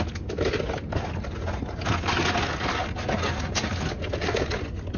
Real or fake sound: real